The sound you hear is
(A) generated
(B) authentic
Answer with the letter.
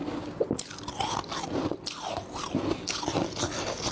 B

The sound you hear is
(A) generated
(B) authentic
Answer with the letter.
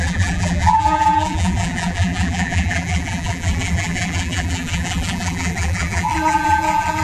A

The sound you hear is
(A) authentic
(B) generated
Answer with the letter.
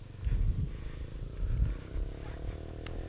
A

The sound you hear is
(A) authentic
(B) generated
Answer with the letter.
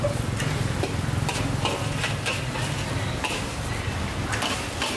A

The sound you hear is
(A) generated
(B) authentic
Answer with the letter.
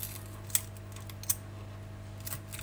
B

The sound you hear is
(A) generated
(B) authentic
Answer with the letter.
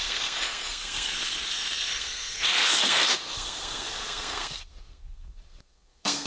A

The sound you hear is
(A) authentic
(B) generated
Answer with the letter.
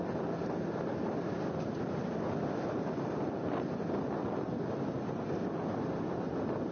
A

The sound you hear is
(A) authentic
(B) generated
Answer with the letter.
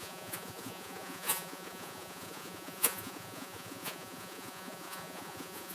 B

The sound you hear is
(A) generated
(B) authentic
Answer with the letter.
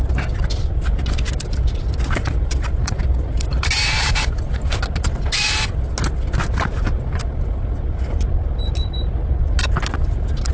B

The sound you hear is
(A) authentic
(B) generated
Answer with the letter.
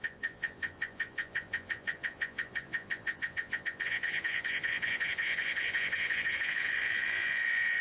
B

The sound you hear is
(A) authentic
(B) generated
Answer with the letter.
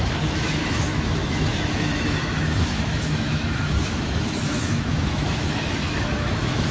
B